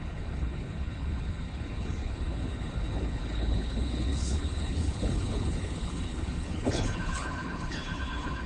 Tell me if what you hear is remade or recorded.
remade